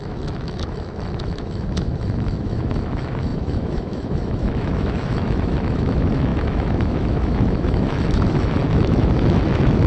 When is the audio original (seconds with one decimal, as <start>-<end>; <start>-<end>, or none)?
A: none